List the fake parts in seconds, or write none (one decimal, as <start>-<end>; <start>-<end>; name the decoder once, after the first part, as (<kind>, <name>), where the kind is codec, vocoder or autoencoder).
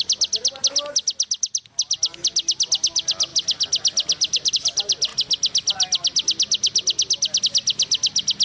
none